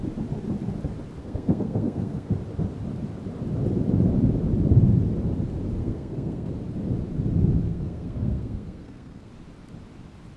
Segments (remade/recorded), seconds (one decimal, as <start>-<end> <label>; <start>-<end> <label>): 0.0-1.2 recorded; 1.2-2.3 remade; 2.3-5.8 recorded; 5.8-6.5 remade; 6.5-7.7 recorded; 7.7-9.3 remade; 9.3-10.4 recorded